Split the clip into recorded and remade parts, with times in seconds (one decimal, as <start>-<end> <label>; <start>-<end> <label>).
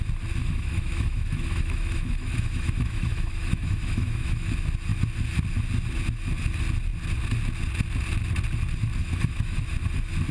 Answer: 0.0-0.4 recorded; 0.4-4.5 remade; 4.5-9.0 recorded; 9.0-9.6 remade; 9.6-10.3 recorded